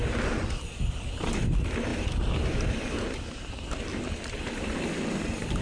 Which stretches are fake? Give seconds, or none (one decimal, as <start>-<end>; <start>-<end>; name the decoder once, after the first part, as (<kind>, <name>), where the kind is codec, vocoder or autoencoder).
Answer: none